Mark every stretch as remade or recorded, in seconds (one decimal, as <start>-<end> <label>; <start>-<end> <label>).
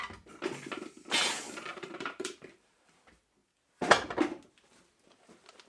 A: 0.0-1.7 recorded; 1.7-2.9 remade; 2.9-5.7 recorded